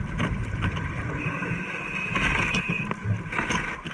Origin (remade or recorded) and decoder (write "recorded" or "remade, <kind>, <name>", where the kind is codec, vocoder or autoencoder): recorded